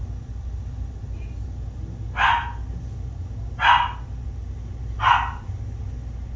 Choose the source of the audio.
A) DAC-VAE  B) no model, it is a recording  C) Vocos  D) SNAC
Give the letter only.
B